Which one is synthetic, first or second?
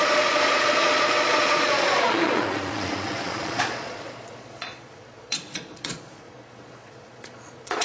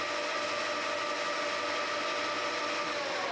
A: first